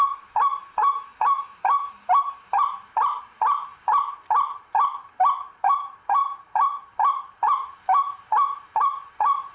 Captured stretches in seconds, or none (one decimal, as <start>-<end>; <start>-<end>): none